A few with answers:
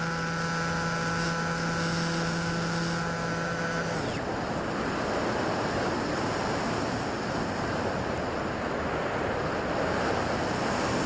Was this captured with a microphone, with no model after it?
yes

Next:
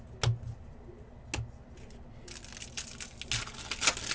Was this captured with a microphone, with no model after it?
yes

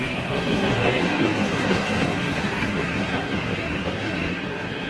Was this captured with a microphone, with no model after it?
no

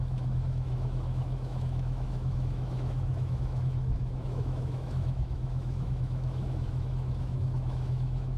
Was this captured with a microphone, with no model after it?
no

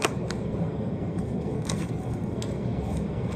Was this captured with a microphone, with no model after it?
no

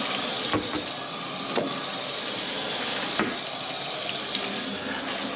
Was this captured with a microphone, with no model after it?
yes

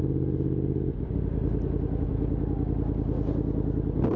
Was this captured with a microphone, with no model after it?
yes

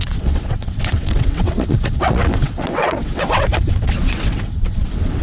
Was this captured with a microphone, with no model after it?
no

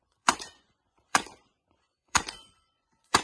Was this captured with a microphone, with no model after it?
no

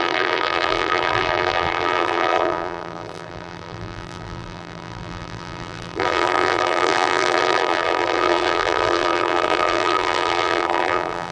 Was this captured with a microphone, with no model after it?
no